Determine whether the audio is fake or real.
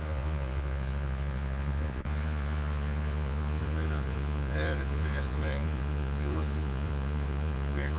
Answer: fake